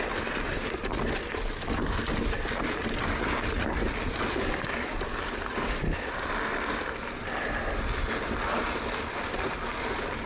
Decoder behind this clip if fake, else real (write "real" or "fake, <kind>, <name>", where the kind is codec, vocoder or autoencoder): real